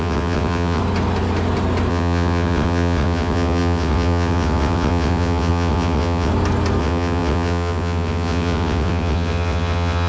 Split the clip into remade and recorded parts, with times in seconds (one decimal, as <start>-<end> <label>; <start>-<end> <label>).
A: 0.0-0.8 remade; 0.8-1.9 recorded; 1.9-6.3 remade; 6.3-6.8 recorded; 6.8-10.1 remade